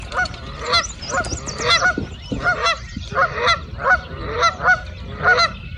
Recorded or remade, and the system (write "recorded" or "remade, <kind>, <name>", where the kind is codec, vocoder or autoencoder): recorded